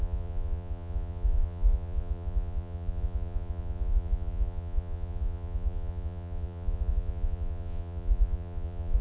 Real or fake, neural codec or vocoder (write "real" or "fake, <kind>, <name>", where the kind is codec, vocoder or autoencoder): fake, vocoder, Vocos